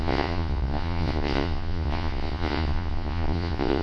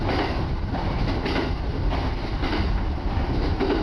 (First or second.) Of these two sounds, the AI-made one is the first